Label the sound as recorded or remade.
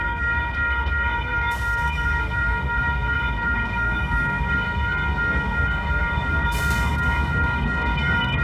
remade